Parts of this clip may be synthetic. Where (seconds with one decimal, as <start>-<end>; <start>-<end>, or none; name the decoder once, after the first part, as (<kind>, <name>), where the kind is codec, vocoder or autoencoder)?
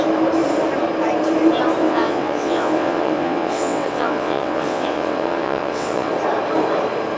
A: 1.8-6.1 (vocoder, WaveNeXt)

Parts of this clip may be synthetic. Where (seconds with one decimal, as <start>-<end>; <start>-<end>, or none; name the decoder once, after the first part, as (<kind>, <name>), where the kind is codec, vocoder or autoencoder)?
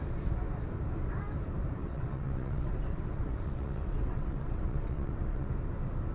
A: 1.8-5.5 (vocoder, WaveNeXt)